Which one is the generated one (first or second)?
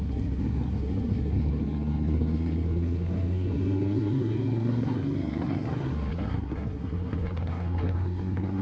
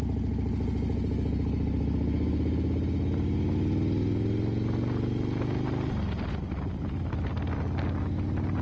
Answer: first